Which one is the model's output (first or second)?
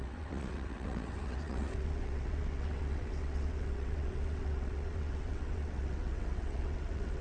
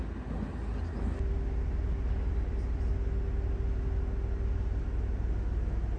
first